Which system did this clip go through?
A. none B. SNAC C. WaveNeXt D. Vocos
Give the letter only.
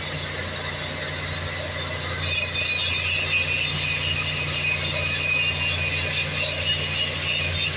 A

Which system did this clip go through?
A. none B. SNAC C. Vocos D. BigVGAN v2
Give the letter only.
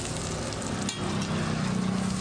A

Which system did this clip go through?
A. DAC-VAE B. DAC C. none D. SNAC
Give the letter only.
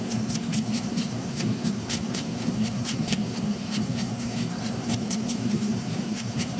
D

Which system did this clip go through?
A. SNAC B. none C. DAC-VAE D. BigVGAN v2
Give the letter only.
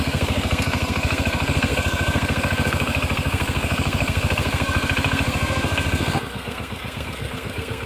A